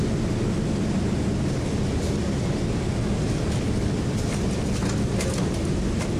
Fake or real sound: real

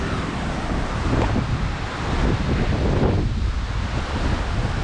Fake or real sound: real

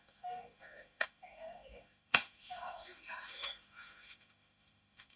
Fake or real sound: fake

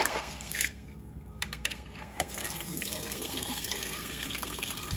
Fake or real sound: fake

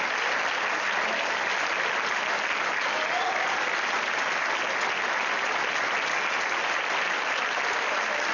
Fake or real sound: real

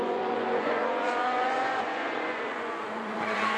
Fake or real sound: fake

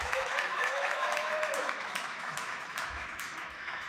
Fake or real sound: fake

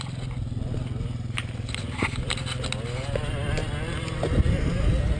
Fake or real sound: real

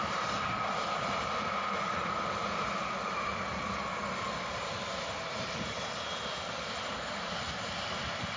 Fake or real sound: real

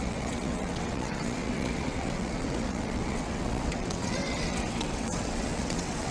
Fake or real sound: fake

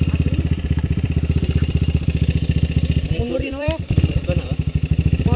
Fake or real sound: fake